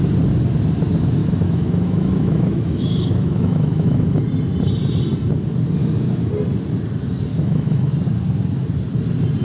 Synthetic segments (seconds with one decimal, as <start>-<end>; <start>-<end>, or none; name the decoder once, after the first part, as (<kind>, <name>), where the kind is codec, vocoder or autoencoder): 1.2-4.2 (autoencoder, DAC-VAE); 5.8-6.3; 7.3-7.9